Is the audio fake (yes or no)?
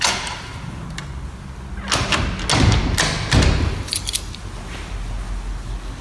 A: no